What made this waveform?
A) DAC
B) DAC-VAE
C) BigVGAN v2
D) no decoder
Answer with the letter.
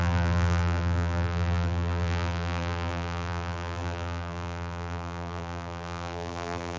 C